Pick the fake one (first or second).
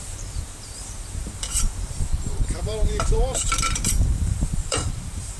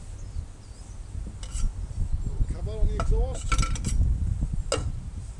first